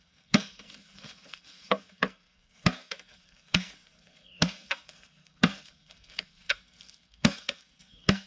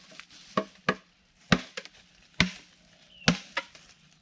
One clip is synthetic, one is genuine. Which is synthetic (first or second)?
first